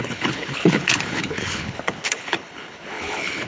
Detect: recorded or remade remade